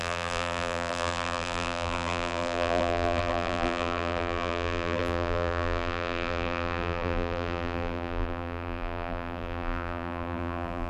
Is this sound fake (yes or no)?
yes